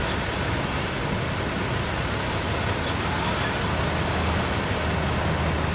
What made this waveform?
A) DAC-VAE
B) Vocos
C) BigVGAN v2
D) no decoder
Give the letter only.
D